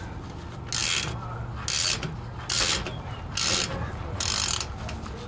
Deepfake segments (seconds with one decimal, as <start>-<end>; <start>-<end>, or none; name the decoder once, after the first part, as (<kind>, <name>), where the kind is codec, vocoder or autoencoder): none

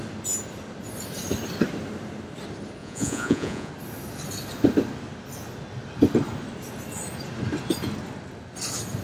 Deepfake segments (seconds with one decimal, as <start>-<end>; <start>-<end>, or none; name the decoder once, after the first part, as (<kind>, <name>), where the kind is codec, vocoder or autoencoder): 2.8-3.7 (vocoder, Vocos)

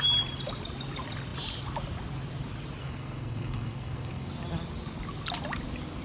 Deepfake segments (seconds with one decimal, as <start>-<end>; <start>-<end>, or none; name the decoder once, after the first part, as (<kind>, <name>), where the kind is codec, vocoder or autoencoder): 2.8-4.3 (codec, SNAC)

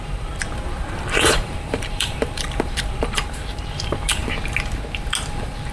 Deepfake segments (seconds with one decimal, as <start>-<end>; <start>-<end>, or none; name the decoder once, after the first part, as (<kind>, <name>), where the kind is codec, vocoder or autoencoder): 0.0-4.2 (vocoder, BigVGAN v2); 5.3-5.7

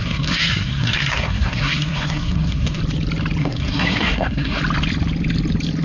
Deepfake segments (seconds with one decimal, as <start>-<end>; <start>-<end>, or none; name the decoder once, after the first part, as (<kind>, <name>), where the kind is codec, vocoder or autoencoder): 0.0-2.8 (codec, SNAC); 3.4-4.6

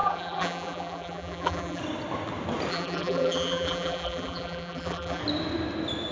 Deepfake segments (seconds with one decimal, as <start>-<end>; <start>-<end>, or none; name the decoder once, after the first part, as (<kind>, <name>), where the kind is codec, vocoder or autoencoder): 0.0-1.8 (vocoder, BigVGAN v2); 2.7-5.2